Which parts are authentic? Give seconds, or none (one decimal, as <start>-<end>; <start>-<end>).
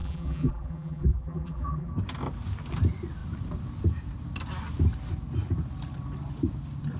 1.9-7.0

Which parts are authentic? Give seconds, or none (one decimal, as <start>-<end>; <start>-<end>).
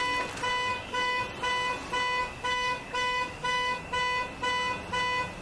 0.0-0.7; 1.2-2.2; 3.8-5.4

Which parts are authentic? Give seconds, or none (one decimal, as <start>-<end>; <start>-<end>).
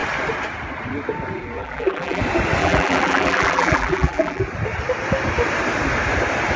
0.0-1.6; 2.2-2.6; 4.4-6.6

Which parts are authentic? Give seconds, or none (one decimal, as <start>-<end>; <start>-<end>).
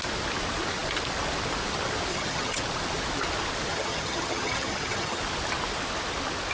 0.0-2.1; 2.6-3.7; 5.2-6.5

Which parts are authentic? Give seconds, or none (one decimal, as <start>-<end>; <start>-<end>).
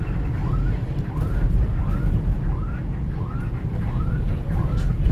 0.0-0.4; 1.8-2.3; 2.8-3.7; 4.3-5.1